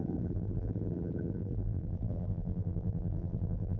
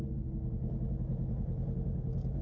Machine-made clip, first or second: first